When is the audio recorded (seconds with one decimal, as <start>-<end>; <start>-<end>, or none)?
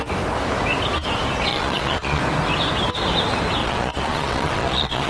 0.0-1.5; 2.2-3.6